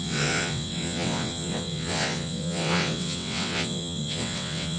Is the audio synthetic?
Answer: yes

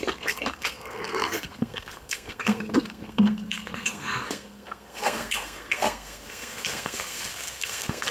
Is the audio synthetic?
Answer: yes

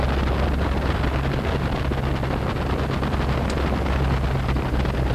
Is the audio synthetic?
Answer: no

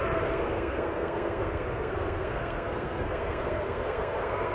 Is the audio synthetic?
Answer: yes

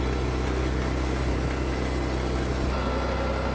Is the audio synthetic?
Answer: no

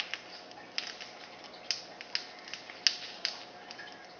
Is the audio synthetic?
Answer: no